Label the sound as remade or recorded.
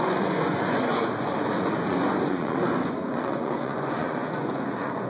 remade